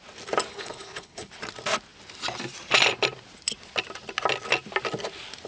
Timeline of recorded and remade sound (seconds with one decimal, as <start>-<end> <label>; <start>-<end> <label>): 0.0-0.5 recorded; 0.5-1.3 remade; 1.3-5.5 recorded